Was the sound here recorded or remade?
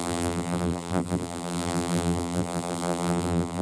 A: remade